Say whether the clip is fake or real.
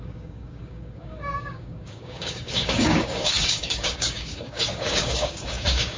fake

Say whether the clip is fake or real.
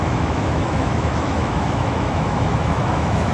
fake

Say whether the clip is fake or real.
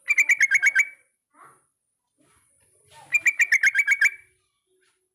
real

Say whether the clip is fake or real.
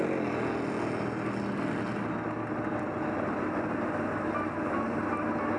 real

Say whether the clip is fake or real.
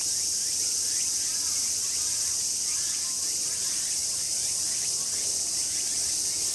real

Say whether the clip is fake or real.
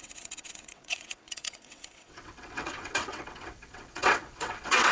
fake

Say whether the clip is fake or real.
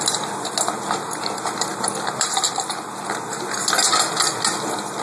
real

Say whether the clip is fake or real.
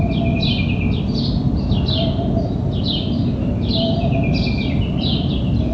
real